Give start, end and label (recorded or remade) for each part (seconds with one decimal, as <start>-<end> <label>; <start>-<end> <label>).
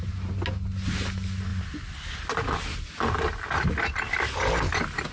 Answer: 0.0-5.1 recorded